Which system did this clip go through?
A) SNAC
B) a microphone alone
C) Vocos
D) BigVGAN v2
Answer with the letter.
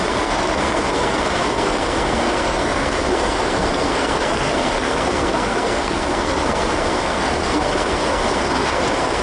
A